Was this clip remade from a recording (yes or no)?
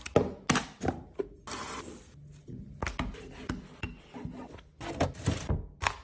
no